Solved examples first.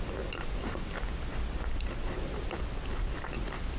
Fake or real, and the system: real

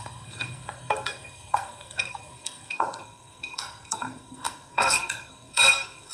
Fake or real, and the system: fake, codec, SNAC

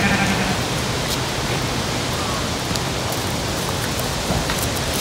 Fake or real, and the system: real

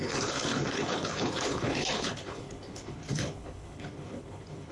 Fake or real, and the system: fake, codec, HILCodec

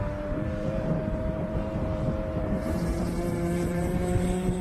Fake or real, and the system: fake, vocoder, BigVGAN v2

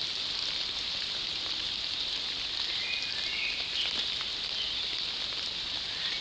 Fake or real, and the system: real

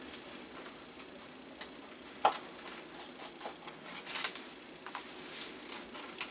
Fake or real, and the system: real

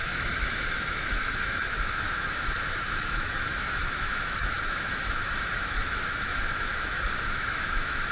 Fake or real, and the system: fake, autoencoder, DAC-VAE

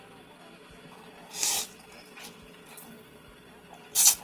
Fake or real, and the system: real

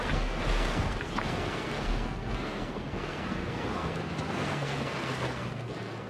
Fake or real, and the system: fake, codec, SNAC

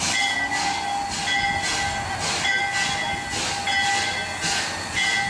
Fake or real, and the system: real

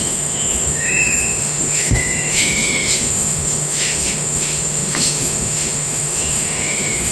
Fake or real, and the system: fake, autoencoder, DAC-VAE